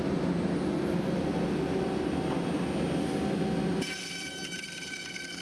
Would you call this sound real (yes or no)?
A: yes